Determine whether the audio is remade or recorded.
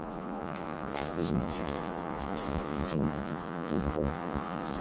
remade